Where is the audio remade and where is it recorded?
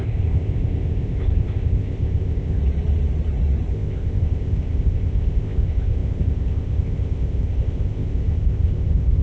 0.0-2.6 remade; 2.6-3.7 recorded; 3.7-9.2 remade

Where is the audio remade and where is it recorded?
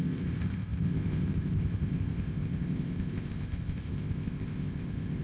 0.0-5.2 remade